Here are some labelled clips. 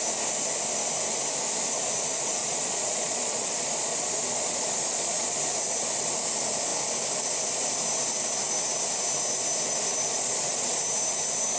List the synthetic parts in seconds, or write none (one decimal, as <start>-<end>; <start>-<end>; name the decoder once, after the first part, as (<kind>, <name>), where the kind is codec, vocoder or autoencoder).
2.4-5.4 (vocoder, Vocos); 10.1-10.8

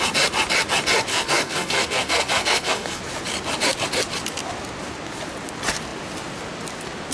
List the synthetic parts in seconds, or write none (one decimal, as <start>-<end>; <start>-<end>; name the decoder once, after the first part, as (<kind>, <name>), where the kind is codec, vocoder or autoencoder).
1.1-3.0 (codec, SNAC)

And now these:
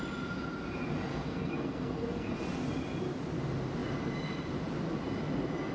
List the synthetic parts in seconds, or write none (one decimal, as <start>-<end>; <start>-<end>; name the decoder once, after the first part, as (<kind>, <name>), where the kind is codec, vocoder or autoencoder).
1.1-2.3 (codec, SNAC)